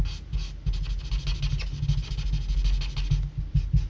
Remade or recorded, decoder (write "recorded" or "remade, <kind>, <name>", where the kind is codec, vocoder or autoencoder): recorded